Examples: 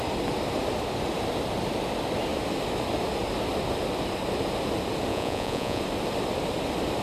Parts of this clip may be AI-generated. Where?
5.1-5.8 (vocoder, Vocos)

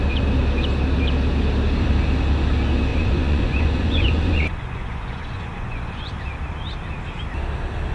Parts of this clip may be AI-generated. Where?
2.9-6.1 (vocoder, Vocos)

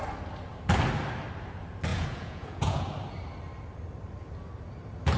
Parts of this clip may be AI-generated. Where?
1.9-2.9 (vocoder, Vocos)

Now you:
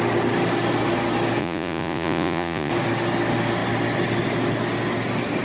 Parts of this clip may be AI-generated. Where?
1.4-2.7 (vocoder, Vocos)

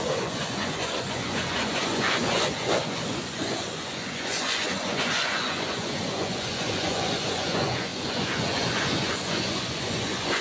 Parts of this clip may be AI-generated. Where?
0.0-10.4 (vocoder, Vocos)

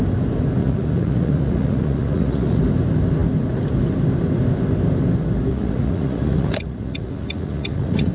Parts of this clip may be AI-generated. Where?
0.6-2.6 (vocoder, Vocos); 5.5-8.1

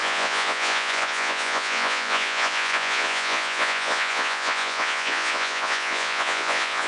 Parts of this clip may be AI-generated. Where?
0.0-6.9 (vocoder, Vocos)

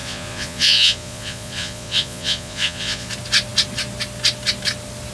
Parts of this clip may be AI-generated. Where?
0.0-3.1 (vocoder, Vocos)